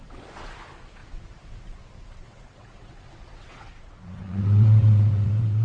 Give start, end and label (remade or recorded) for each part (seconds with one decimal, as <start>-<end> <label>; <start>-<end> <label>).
0.0-5.6 remade